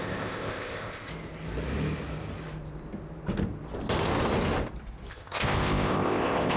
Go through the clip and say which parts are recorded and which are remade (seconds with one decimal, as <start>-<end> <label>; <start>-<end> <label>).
0.0-1.1 remade; 1.1-5.1 recorded; 5.1-6.6 remade